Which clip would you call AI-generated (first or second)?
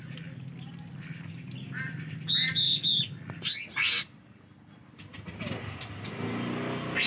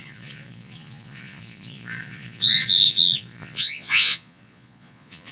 second